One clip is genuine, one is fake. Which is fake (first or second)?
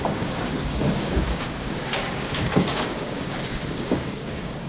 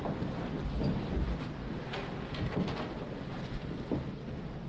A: first